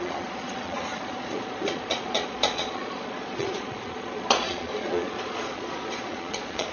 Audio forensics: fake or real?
fake